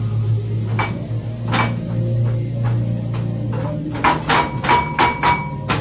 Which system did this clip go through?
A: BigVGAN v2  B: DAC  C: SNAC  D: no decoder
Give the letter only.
D